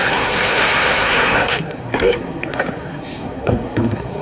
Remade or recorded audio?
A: remade